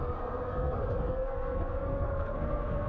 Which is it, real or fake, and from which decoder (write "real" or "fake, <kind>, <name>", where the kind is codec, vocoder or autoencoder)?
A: fake, codec, SNAC